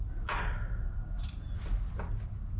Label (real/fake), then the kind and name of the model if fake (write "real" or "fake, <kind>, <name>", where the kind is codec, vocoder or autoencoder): real